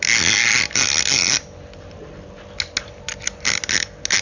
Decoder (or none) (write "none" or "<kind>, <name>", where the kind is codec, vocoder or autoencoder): none